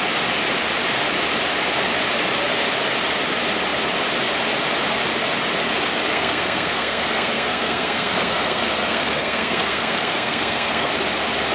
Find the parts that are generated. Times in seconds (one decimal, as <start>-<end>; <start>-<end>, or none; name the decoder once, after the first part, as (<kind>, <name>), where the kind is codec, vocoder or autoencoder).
6.1-10.9 (codec, SNAC)